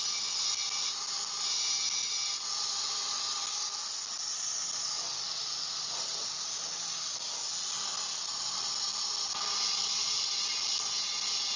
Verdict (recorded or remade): recorded